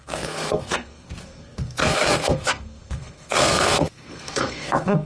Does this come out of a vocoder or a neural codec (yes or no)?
yes